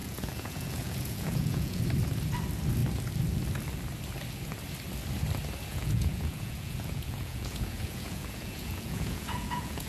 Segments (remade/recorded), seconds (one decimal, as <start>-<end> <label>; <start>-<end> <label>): 0.0-1.8 remade; 1.8-5.7 recorded; 5.7-9.9 remade

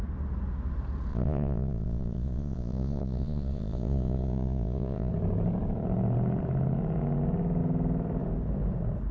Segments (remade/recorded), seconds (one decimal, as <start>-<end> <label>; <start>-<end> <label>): 0.0-1.1 recorded; 1.1-5.1 remade; 5.1-9.1 recorded

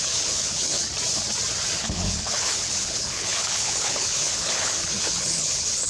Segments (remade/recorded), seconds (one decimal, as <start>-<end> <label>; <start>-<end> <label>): 0.0-0.8 remade; 0.8-1.8 recorded; 1.8-5.9 remade